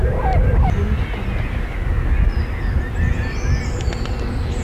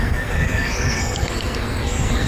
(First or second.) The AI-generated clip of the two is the second